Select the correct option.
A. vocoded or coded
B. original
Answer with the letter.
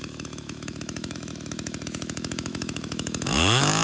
A